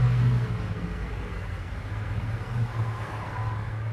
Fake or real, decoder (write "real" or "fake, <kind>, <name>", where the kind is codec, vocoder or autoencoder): fake, codec, SNAC